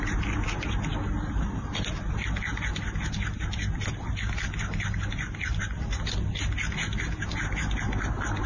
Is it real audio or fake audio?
real